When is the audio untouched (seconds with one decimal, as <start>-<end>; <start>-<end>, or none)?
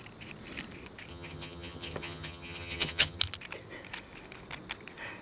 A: 0.0-1.1; 3.2-5.2